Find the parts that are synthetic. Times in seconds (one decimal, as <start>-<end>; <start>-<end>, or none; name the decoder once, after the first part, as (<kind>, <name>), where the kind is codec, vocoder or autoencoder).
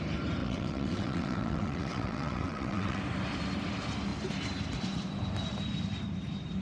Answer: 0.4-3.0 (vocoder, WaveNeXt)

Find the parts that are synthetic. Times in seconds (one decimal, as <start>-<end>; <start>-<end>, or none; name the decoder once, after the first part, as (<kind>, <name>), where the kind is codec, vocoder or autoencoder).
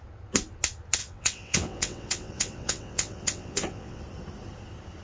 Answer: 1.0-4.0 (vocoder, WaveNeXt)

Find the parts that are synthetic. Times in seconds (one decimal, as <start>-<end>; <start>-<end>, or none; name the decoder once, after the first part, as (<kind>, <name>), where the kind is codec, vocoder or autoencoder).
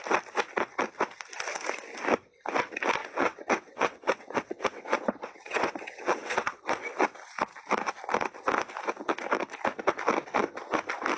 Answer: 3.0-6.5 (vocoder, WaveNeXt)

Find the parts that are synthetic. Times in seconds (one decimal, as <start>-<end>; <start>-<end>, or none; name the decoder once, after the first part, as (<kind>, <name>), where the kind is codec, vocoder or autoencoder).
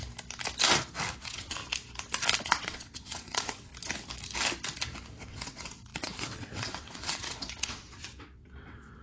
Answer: 1.2-1.6 (vocoder, WaveNeXt); 2.4-3.7; 5.2-9.0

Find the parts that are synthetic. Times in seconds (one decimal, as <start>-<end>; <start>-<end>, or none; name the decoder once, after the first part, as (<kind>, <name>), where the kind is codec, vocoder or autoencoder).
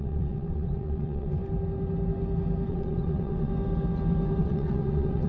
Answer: 0.0-1.4 (vocoder, WaveNeXt); 2.7-3.5; 4.4-5.3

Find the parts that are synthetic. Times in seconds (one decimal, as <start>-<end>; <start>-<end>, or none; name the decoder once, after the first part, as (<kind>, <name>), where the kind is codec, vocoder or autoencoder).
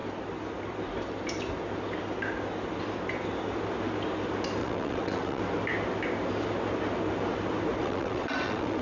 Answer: 4.6-5.4 (vocoder, WaveNeXt); 7.8-8.8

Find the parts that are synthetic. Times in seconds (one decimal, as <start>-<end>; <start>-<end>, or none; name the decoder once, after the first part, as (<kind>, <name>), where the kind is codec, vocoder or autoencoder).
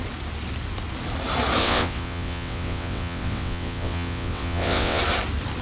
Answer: 1.6-5.0 (vocoder, WaveNeXt)